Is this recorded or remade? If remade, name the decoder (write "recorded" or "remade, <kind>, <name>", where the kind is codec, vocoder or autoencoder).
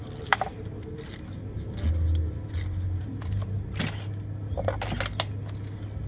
recorded